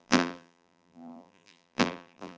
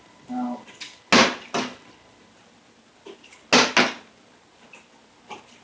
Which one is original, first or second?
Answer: second